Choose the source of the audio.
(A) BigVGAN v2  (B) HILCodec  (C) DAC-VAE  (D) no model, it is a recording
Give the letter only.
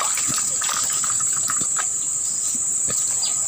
D